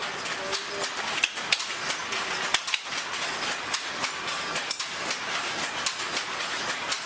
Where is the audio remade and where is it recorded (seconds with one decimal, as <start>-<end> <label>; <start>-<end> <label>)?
0.0-7.1 recorded